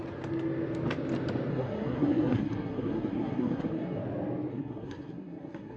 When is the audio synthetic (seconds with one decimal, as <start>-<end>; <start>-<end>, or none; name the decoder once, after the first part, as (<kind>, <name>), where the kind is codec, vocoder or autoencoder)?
1.5-4.0 (codec, SNAC); 4.5-5.8